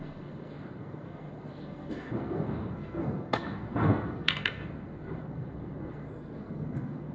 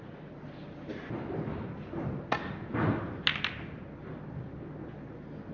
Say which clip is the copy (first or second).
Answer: first